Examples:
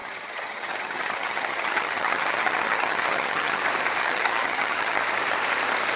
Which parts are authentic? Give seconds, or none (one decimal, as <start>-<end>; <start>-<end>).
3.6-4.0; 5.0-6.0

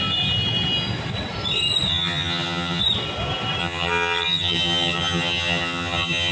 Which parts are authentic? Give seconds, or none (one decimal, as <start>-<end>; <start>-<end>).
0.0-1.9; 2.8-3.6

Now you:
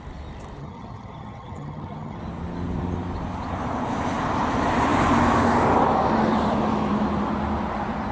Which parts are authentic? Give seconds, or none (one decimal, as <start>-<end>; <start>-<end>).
0.0-0.6; 2.2-8.1

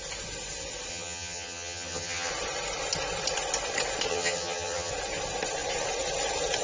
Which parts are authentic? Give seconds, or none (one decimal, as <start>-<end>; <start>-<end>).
0.0-0.9; 2.3-4.1; 4.9-6.6

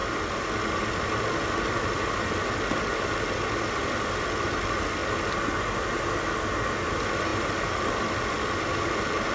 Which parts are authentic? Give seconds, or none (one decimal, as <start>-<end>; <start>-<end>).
0.0-9.3

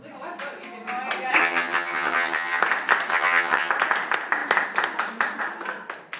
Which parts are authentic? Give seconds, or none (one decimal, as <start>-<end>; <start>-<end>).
0.0-1.4; 2.6-3.1; 3.7-6.2

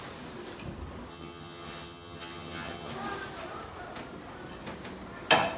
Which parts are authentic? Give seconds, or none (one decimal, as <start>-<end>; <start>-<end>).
0.0-1.1; 2.9-5.6